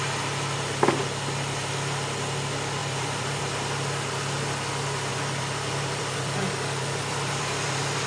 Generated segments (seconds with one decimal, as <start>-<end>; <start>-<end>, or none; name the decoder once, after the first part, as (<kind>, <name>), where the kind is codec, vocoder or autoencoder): 2.8-3.4 (vocoder, BigVGAN v2); 5.1-8.1